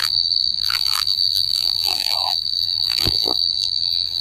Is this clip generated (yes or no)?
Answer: yes